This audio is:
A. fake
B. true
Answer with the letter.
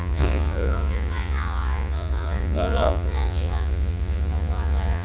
A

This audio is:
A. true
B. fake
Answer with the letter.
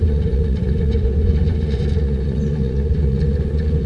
B